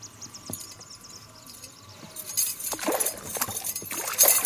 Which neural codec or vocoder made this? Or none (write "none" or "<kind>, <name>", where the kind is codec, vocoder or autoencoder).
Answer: none